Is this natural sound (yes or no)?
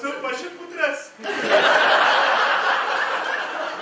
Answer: yes